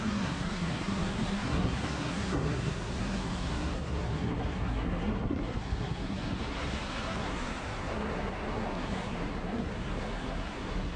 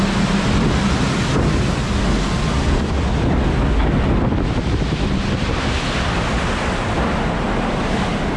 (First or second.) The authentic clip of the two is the second